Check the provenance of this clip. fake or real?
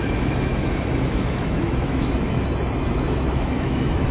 fake